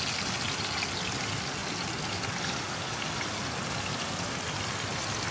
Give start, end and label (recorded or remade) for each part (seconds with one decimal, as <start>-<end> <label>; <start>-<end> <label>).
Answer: 0.0-5.3 recorded